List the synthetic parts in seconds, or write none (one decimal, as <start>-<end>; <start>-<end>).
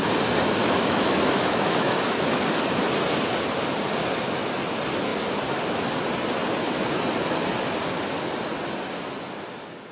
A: 0.6-2.4